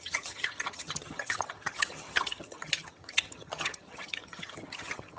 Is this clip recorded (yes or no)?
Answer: no